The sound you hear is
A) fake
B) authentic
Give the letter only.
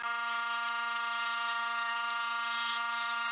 B